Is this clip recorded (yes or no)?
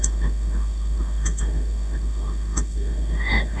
no